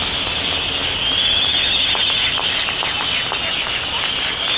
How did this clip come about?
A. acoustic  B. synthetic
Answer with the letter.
A